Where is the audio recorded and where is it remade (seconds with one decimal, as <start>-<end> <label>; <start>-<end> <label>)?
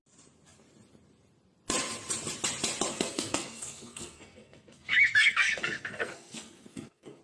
0.0-2.9 recorded; 2.9-7.2 remade